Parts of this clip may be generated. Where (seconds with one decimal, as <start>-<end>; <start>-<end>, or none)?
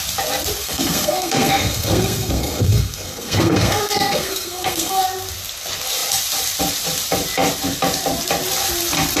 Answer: 0.6-5.0